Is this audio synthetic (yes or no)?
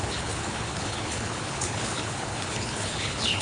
yes